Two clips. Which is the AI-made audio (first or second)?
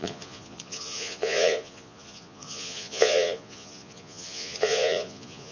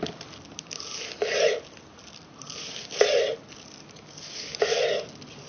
first